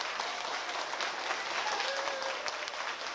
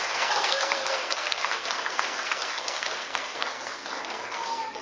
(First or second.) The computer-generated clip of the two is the second